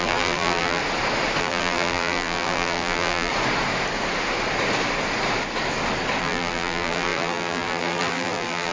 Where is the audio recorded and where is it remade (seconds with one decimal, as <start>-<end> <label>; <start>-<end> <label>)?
0.0-0.8 remade; 0.8-1.4 recorded; 1.4-3.3 remade; 3.3-6.2 recorded; 6.2-8.7 remade